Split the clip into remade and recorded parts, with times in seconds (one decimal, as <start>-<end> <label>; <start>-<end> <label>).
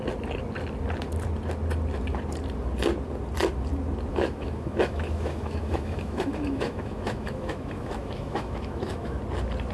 0.0-4.1 recorded; 4.1-9.2 remade; 9.2-9.7 recorded